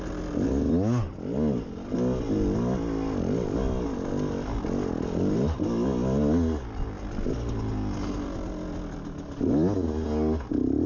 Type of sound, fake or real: real